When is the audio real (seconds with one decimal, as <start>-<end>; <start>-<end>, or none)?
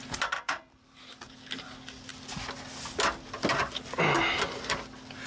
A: 1.1-5.3